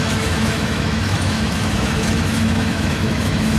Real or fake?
fake